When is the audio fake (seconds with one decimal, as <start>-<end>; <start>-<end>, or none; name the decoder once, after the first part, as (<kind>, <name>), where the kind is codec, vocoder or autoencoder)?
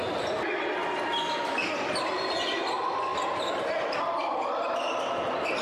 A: 0.0-0.8 (vocoder, BigVGAN v2); 2.1-3.1; 3.8-5.6